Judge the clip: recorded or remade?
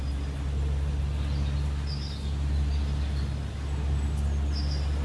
recorded